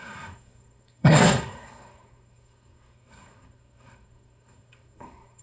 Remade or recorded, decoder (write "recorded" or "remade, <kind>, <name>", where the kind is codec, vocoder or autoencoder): remade, codec, SNAC